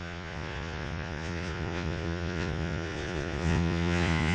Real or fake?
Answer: fake